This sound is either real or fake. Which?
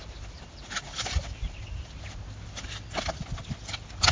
real